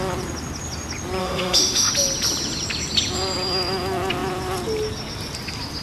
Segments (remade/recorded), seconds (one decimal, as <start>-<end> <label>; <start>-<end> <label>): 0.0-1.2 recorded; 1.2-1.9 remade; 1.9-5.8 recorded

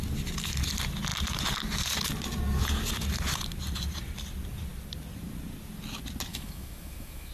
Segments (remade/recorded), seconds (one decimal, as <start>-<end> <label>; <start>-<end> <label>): 0.0-6.3 recorded; 6.3-7.3 remade

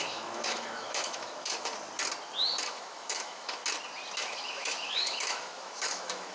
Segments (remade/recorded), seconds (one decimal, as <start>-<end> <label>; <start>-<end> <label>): 0.0-1.7 remade; 1.7-2.6 recorded; 2.6-3.6 remade; 3.6-4.2 recorded; 4.2-6.3 remade

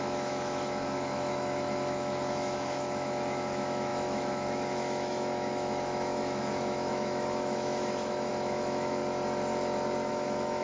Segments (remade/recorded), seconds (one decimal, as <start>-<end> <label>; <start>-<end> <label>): 0.0-9.0 remade; 9.0-10.1 recorded; 10.1-10.6 remade

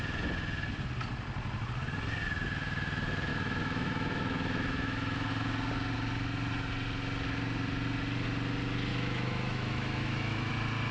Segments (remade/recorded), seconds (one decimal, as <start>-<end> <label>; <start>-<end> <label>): 0.0-3.3 recorded; 3.3-5.3 remade; 5.3-8.9 recorded; 8.9-10.5 remade; 10.5-10.9 recorded

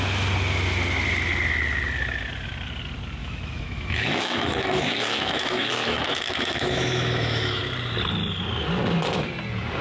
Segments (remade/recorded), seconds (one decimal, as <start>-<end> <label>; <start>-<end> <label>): 0.0-3.2 recorded; 3.2-7.6 remade; 7.6-9.8 recorded